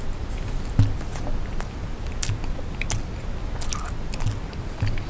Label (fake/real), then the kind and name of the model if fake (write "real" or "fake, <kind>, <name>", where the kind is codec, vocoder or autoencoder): real